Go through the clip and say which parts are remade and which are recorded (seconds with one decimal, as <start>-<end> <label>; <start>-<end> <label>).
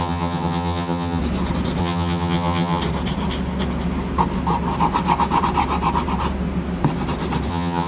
0.0-1.2 remade; 1.2-1.8 recorded; 1.8-2.8 remade; 2.8-7.5 recorded; 7.5-7.9 remade